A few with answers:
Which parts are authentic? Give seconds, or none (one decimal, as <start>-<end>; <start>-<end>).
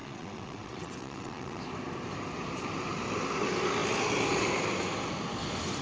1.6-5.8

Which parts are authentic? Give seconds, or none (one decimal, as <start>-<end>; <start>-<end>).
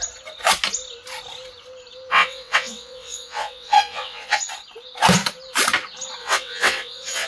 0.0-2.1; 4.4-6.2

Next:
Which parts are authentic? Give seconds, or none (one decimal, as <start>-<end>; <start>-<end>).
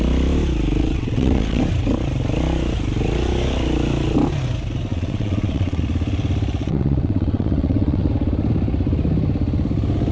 0.0-0.8; 1.6-4.9; 5.8-6.6; 8.1-10.1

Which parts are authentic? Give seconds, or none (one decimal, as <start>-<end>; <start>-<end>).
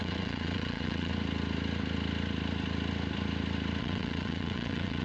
1.1-3.8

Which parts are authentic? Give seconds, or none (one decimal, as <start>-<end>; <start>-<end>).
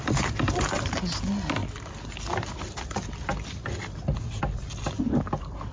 0.0-5.7